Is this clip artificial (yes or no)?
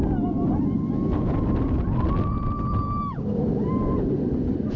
no